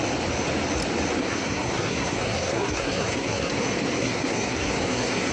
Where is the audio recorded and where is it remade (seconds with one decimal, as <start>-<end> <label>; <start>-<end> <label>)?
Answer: 0.0-1.2 recorded; 1.2-3.5 remade; 3.5-4.0 recorded; 4.0-5.3 remade